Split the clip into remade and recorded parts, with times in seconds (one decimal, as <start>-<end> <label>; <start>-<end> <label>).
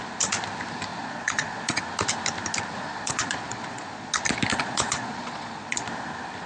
0.0-0.9 recorded; 0.9-1.8 remade; 1.8-2.9 recorded; 2.9-4.1 remade; 4.1-4.5 recorded; 4.5-5.9 remade; 5.9-6.5 recorded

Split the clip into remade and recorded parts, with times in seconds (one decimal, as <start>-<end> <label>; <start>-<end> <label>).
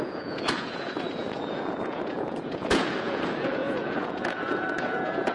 0.0-5.3 remade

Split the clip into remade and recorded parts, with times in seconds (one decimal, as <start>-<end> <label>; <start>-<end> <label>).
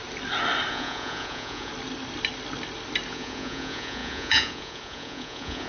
0.0-0.7 recorded; 0.7-1.7 remade; 1.7-3.1 recorded; 3.1-5.7 remade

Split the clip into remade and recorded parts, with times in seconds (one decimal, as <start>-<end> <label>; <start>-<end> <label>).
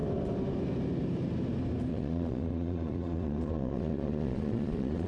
0.0-1.9 recorded; 1.9-5.1 remade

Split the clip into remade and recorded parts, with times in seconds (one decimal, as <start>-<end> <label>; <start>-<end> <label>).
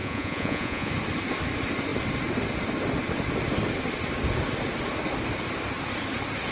0.0-0.9 remade; 0.9-6.5 recorded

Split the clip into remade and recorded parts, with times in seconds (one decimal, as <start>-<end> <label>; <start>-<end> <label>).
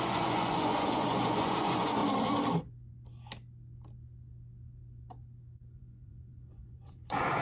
0.0-2.0 remade; 2.0-5.8 recorded; 5.8-7.4 remade